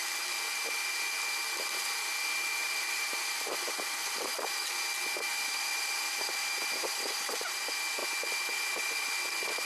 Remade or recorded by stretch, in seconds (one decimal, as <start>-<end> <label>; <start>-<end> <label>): 0.0-2.6 recorded; 2.6-4.5 remade; 4.5-5.3 recorded; 5.3-7.1 remade; 7.1-9.7 recorded